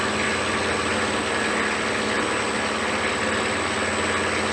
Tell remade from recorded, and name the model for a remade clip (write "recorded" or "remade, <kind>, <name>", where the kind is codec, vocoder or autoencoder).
recorded